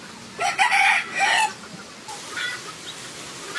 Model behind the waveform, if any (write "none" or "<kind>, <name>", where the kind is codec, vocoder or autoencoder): none